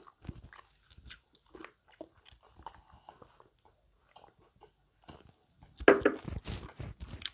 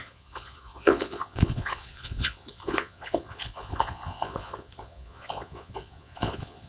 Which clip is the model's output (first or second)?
second